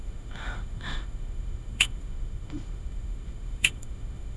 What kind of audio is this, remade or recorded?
remade